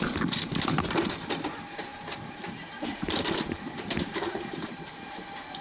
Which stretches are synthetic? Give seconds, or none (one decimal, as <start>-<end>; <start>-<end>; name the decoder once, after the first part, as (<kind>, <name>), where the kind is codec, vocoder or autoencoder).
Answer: 1.9-5.6 (vocoder, BigVGAN v2)